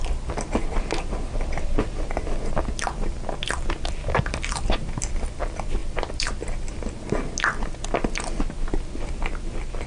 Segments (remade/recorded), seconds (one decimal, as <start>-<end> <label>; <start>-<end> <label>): 0.0-9.9 recorded